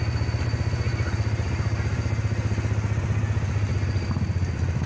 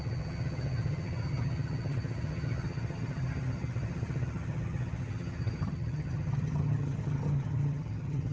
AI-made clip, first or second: second